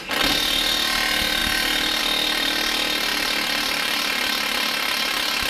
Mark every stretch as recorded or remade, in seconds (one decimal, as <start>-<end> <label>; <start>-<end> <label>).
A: 0.0-3.1 recorded; 3.1-4.1 remade; 4.1-5.5 recorded